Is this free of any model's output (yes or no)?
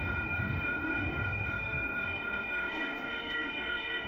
no